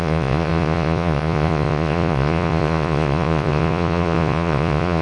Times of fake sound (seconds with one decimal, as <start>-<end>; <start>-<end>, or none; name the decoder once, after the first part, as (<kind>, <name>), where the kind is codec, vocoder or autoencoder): 0.0-5.0 (vocoder, Vocos)

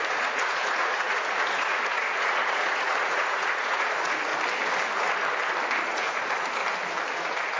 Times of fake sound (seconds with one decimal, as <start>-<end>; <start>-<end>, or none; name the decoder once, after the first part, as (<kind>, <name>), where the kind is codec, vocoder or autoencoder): 0.0-4.3 (vocoder, Vocos); 5.8-6.6; 7.1-7.6